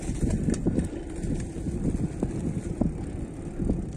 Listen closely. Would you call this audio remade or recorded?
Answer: recorded